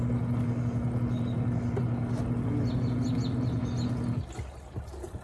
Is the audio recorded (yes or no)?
yes